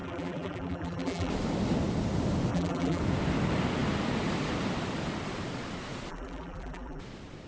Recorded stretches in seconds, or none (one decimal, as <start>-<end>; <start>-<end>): 1.3-2.5; 3.0-6.1; 7.0-7.5